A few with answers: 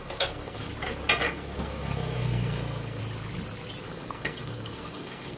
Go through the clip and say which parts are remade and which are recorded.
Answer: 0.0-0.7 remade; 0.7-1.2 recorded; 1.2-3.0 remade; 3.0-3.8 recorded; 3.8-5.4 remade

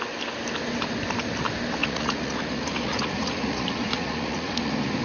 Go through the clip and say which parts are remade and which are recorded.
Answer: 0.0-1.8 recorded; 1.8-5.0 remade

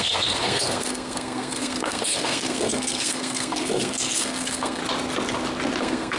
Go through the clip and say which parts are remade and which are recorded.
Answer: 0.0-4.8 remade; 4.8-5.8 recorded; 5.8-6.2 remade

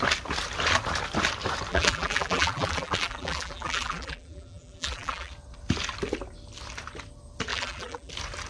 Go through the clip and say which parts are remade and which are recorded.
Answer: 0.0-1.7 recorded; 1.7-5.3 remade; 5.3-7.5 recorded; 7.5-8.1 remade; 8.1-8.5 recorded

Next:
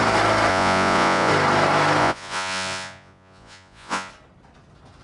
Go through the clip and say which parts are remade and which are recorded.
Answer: 0.0-0.5 recorded; 0.5-1.3 remade; 1.3-2.0 recorded; 2.0-4.1 remade; 4.1-5.0 recorded

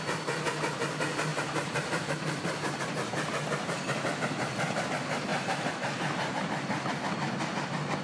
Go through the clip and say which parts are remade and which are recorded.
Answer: 0.0-1.3 recorded; 1.3-2.8 remade; 2.8-5.3 recorded; 5.3-6.5 remade; 6.5-8.0 recorded